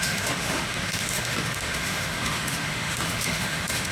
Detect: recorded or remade remade